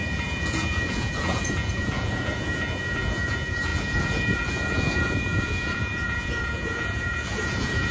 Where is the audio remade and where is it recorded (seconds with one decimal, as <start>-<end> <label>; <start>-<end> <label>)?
0.0-7.9 remade